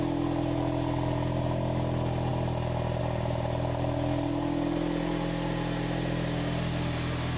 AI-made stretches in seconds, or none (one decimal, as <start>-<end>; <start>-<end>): none